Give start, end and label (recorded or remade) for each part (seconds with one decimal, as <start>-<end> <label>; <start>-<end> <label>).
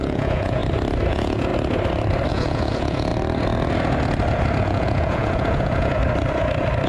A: 0.0-0.6 remade; 0.6-1.1 recorded; 1.1-1.5 remade; 1.5-2.3 recorded; 2.3-3.1 remade; 3.1-4.6 recorded; 4.6-6.0 remade; 6.0-6.9 recorded